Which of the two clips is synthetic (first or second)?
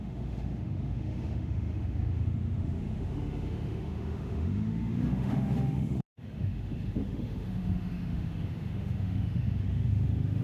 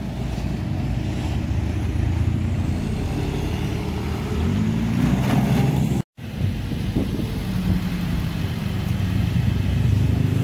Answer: first